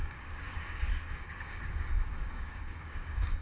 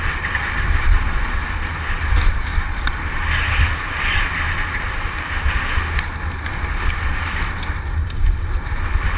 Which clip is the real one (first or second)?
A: second